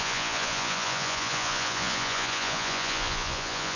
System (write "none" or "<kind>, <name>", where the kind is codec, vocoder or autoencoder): vocoder, Vocos